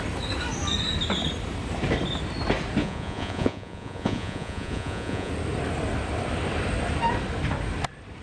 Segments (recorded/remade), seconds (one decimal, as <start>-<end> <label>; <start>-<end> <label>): 0.0-2.8 recorded; 2.8-5.3 remade; 5.3-8.2 recorded